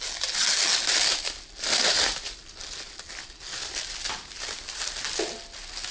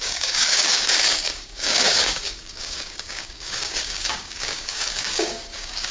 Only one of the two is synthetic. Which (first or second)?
second